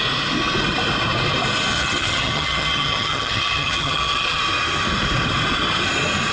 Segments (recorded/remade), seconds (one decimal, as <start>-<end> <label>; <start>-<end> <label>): 0.0-1.7 recorded; 1.7-4.4 remade; 4.4-6.3 recorded